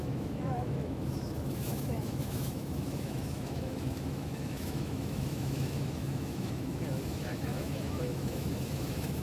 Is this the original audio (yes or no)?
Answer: no